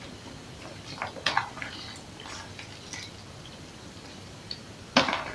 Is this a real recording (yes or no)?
yes